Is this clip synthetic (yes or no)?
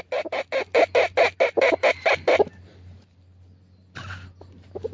no